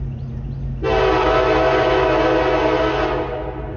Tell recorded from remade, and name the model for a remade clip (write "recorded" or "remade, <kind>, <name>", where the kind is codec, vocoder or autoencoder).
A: recorded